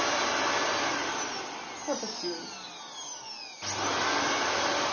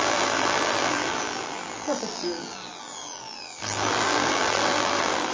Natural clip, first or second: first